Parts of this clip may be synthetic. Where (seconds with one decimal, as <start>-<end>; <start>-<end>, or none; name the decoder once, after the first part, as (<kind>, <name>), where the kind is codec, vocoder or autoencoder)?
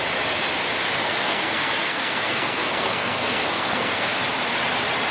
1.0-4.1 (codec, SNAC)